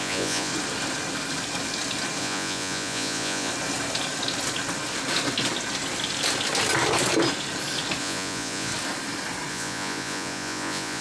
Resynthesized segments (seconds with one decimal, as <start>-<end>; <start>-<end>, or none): 0.0-0.5; 2.2-3.5; 8.0-8.7; 9.5-11.0